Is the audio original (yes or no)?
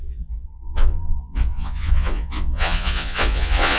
no